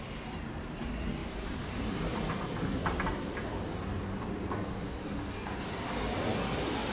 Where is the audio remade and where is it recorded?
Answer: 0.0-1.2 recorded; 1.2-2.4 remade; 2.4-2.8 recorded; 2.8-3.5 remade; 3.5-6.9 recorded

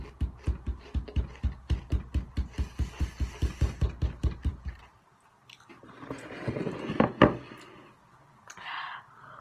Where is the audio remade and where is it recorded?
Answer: 0.0-4.5 recorded; 4.5-6.8 remade; 6.8-9.4 recorded

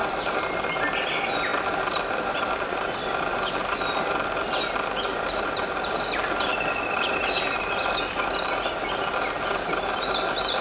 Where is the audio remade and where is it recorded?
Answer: 0.0-10.6 recorded

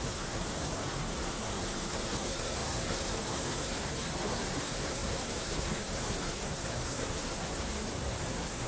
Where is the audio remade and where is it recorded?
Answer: 0.0-8.7 remade

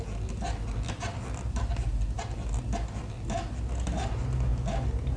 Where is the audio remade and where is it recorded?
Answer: 0.0-5.2 recorded

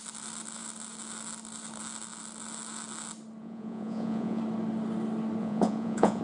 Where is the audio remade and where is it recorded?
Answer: 0.0-3.4 recorded; 3.4-4.4 remade; 4.4-5.4 recorded; 5.4-6.2 remade

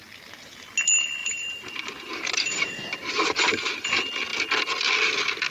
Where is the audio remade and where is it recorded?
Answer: 0.0-1.2 recorded; 1.2-3.7 remade; 3.7-5.5 recorded